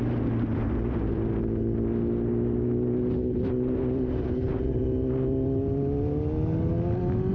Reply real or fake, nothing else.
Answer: real